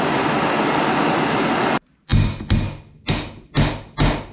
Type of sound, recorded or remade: recorded